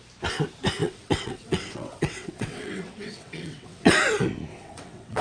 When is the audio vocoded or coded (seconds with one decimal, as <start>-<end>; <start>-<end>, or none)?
0.8-3.9; 4.5-5.2